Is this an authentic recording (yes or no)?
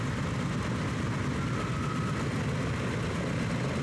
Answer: yes